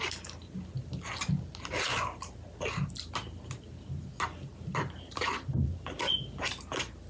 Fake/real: real